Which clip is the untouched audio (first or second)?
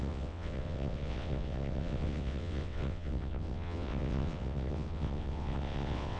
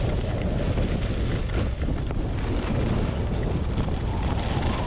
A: second